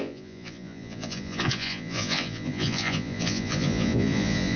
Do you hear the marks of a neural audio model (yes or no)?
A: yes